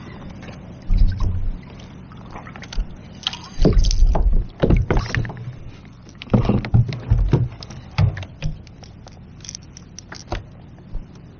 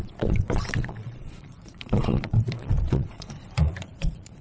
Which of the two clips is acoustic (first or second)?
first